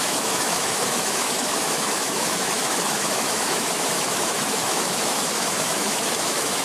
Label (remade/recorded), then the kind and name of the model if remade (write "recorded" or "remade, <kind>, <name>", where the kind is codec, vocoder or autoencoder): remade, autoencoder, DAC-VAE